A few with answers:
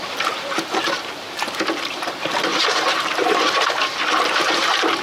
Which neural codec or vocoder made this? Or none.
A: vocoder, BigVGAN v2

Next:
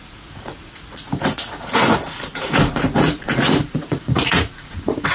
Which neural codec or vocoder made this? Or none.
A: vocoder, Vocos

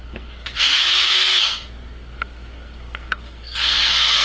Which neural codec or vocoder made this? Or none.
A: codec, SNAC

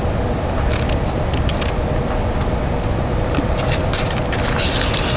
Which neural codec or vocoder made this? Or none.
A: none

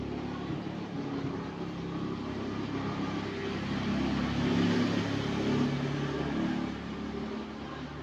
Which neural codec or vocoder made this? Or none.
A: none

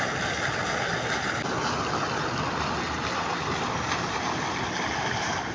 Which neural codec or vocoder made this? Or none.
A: none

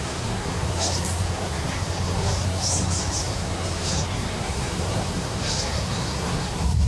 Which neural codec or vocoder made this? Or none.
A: codec, SNAC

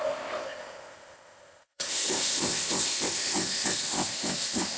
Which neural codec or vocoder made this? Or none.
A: codec, ZipCodec